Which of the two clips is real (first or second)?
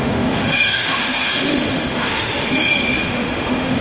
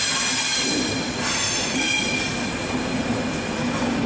second